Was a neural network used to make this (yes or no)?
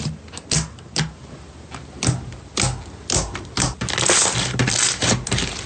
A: no